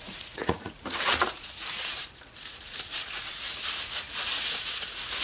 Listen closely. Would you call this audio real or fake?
fake